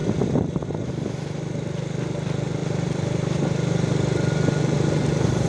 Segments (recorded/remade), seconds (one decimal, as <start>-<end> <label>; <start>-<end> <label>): 0.0-2.6 recorded; 2.6-4.3 remade; 4.3-5.5 recorded